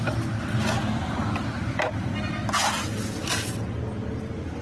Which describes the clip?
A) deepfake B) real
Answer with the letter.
B